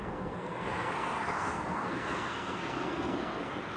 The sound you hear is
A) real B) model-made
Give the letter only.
B